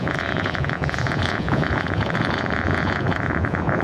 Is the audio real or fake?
fake